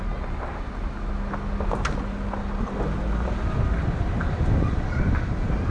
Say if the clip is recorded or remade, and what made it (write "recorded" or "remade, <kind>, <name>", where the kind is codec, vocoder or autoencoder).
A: recorded